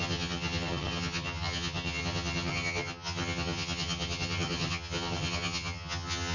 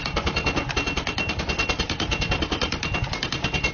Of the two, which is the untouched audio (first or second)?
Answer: second